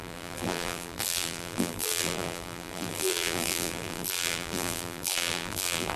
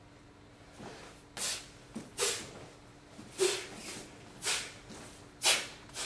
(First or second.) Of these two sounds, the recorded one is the second